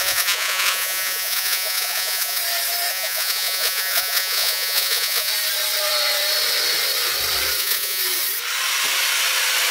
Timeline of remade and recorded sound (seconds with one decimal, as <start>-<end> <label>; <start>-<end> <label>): 0.0-2.4 remade; 2.4-2.9 recorded; 2.9-5.3 remade; 5.3-7.6 recorded; 7.6-8.0 remade; 8.0-9.7 recorded